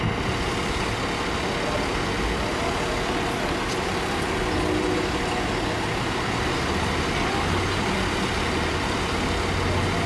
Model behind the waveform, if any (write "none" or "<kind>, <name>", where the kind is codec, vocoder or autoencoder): none